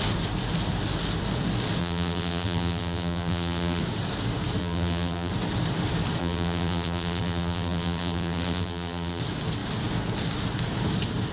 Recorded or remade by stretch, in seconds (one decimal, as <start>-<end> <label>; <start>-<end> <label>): 0.0-1.8 recorded; 1.8-3.8 remade; 3.8-4.6 recorded; 4.6-5.3 remade; 5.3-6.2 recorded; 6.2-9.2 remade; 9.2-11.3 recorded